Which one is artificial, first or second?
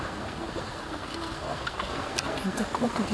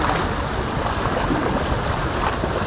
first